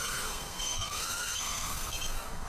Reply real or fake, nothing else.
fake